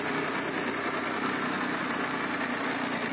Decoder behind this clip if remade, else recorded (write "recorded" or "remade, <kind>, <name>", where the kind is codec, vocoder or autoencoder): recorded